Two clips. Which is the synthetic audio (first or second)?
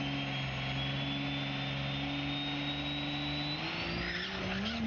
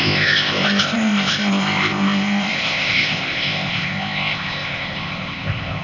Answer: second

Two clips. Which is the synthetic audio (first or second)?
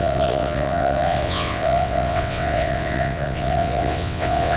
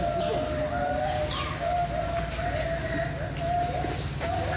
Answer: first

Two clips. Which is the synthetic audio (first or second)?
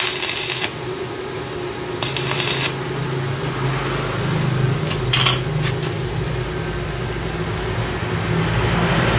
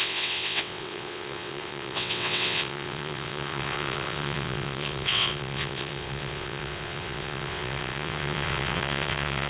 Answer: second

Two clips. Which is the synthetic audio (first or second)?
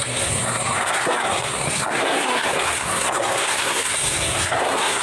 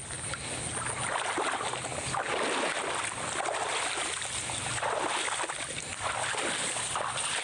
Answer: first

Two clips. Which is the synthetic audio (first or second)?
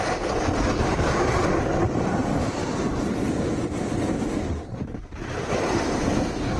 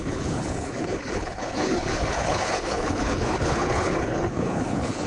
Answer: second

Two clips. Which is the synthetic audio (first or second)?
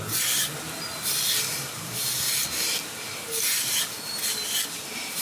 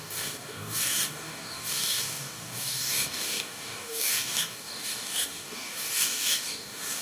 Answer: second